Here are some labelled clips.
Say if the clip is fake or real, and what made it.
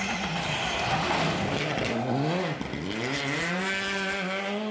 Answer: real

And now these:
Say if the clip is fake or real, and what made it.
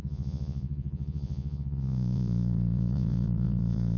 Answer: fake, vocoder, Vocos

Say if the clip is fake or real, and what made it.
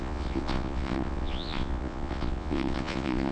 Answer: fake, vocoder, Vocos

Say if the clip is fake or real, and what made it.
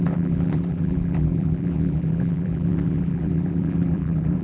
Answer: fake, vocoder, BigVGAN v2